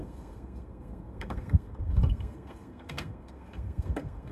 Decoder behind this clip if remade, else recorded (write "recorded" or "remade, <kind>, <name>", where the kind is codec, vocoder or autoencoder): remade, codec, SNAC